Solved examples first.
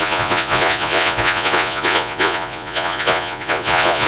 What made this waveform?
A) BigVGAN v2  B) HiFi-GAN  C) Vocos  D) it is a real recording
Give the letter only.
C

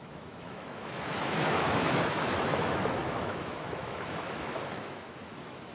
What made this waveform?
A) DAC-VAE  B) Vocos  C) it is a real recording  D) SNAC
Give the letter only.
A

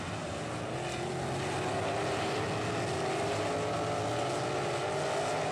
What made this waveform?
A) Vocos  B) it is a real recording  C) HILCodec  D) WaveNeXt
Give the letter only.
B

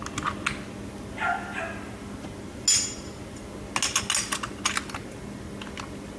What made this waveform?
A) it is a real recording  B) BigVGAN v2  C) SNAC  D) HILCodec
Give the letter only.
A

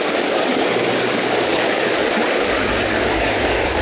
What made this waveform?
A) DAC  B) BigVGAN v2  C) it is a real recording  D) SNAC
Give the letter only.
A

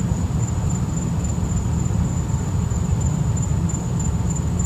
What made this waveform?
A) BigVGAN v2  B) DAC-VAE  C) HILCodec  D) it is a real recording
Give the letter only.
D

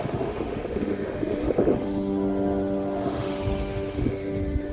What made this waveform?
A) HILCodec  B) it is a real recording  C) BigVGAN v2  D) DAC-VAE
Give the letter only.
D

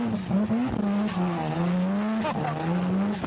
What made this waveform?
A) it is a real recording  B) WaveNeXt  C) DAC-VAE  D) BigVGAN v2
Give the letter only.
A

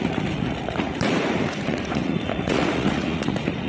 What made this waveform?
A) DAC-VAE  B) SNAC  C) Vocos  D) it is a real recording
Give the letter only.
C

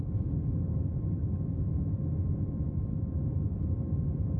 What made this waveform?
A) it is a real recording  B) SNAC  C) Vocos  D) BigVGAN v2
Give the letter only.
A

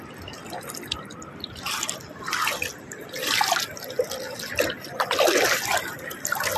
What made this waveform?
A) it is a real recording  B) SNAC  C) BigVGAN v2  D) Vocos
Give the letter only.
A